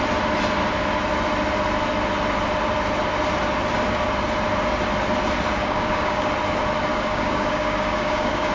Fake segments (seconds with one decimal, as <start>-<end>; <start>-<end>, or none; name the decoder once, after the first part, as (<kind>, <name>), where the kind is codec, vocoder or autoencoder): 5.6-6.3 (codec, DAC); 6.9-8.5